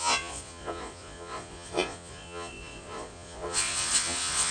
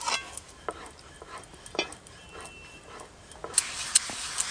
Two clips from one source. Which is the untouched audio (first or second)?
second